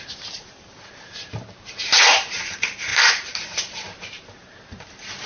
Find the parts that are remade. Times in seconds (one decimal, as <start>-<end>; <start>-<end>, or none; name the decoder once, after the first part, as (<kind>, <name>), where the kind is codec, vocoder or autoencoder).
0.0-5.3 (vocoder, BigVGAN v2)